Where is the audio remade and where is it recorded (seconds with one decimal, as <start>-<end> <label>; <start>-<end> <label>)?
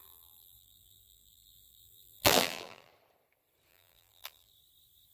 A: 0.0-2.9 remade; 2.9-3.7 recorded; 3.7-4.5 remade; 4.5-5.1 recorded